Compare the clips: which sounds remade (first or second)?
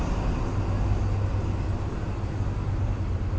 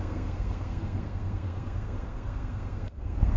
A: second